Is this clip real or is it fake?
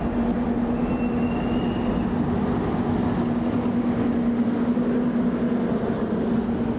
real